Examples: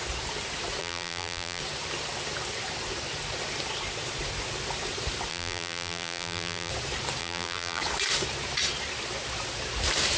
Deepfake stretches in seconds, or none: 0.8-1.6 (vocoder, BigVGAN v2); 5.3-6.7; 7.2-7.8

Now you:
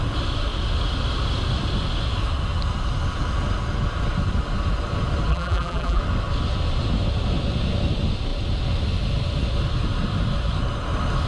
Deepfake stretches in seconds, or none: 5.3-6.0 (vocoder, BigVGAN v2)

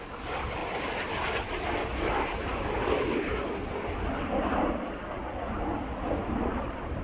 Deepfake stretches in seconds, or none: none

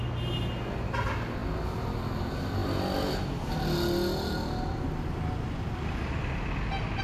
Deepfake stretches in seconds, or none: none

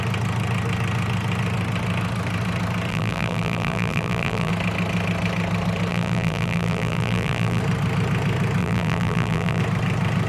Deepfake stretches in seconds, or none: 2.9-4.5 (vocoder, BigVGAN v2); 5.9-7.6; 8.6-9.6

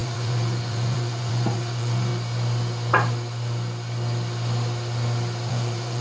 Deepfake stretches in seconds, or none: 0.0-2.1 (vocoder, Vocos); 5.5-6.0

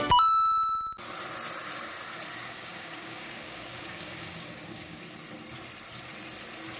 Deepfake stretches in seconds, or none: 2.4-5.0 (codec, DAC)